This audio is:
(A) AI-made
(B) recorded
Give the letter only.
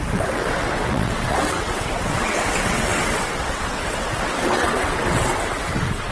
A